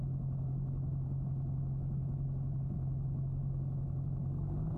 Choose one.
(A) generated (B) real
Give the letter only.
B